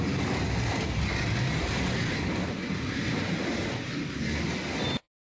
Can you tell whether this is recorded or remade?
recorded